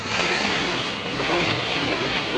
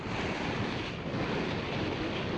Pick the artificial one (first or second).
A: first